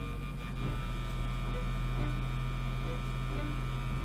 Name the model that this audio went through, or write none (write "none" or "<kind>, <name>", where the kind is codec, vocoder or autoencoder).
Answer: none